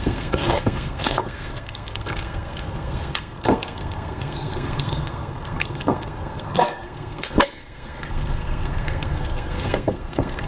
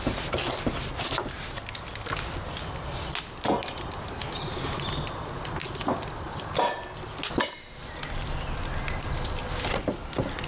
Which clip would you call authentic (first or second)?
second